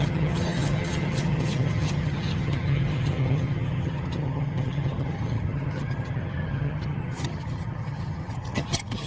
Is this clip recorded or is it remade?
remade